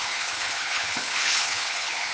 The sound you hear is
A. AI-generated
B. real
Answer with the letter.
A